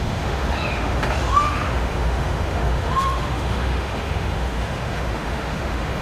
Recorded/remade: remade